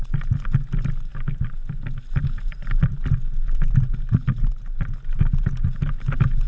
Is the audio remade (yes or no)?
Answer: no